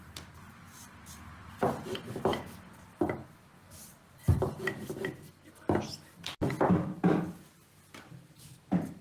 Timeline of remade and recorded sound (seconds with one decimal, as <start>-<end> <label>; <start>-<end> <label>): 0.0-9.0 recorded